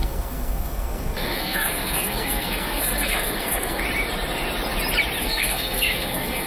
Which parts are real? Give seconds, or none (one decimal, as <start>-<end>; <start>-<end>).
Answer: 3.8-5.2